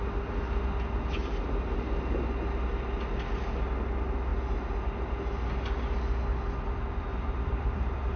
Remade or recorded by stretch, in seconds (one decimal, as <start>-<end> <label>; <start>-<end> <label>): 0.0-7.1 recorded; 7.1-8.2 remade